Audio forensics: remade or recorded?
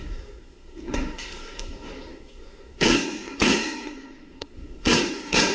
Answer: remade